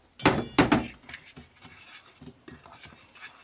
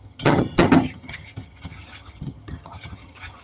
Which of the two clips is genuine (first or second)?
first